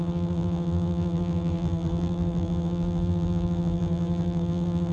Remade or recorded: remade